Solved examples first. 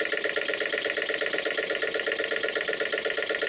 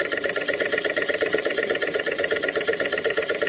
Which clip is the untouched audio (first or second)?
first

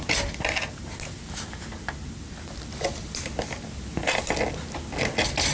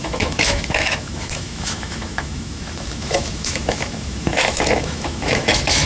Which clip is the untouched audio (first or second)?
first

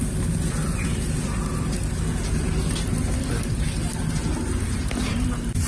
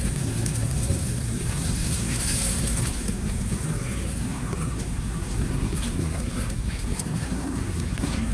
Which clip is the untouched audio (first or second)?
first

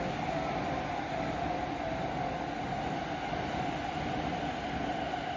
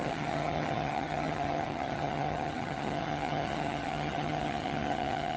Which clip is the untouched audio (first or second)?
first